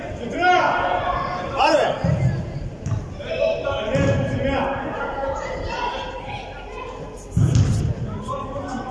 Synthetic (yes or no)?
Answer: no